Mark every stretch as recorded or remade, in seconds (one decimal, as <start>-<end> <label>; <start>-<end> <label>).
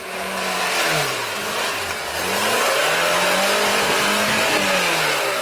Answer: 0.0-5.4 recorded